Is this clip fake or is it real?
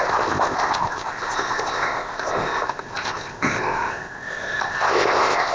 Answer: fake